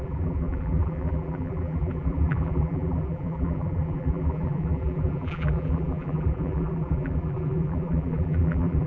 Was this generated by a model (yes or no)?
yes